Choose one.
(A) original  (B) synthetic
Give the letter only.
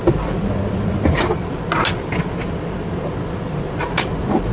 A